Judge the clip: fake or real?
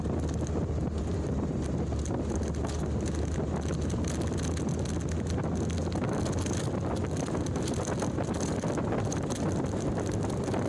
real